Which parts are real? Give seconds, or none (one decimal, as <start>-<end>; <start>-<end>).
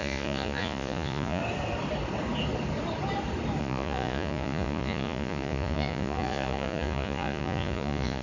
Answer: 1.4-3.6